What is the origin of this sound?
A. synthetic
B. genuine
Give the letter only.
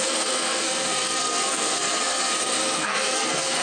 A